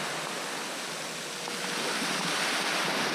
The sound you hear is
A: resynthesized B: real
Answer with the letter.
B